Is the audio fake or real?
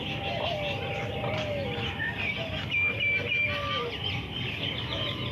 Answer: real